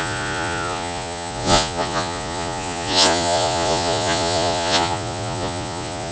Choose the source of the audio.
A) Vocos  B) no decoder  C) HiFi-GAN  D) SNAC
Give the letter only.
A